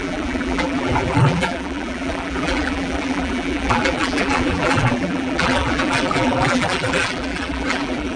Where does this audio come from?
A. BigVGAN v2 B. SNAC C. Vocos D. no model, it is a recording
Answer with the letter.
A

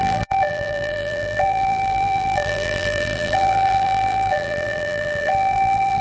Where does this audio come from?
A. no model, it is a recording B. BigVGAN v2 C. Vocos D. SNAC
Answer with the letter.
B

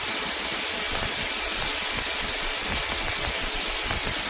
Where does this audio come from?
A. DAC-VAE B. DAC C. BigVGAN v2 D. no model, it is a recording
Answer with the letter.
D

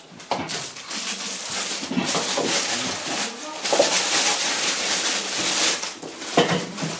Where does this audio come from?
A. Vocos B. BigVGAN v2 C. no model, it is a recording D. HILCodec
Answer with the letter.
C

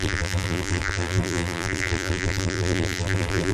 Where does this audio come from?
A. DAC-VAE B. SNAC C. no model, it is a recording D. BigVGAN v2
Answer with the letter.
D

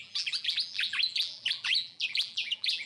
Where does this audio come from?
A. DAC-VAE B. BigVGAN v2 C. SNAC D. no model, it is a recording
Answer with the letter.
B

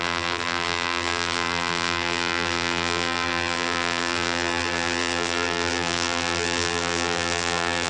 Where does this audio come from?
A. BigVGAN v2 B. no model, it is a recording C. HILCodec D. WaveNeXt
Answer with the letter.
A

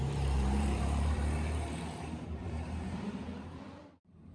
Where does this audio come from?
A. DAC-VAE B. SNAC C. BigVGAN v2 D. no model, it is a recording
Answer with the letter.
C